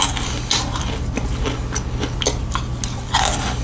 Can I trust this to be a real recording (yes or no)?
yes